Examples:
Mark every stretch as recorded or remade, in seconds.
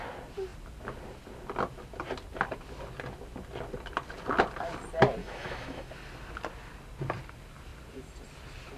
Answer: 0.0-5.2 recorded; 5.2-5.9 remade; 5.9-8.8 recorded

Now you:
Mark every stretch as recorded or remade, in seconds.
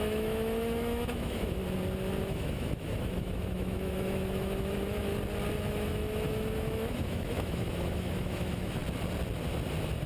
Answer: 0.0-1.6 remade; 1.6-2.2 recorded; 2.2-5.1 remade; 5.1-5.7 recorded; 5.7-8.8 remade; 8.8-10.1 recorded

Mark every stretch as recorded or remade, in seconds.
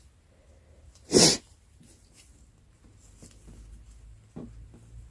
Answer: 0.0-5.1 recorded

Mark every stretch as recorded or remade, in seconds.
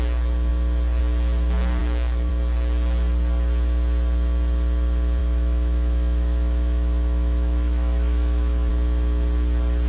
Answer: 0.0-1.8 recorded; 1.8-2.3 remade; 2.3-5.2 recorded; 5.2-8.7 remade; 8.7-9.9 recorded